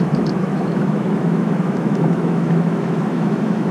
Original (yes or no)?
no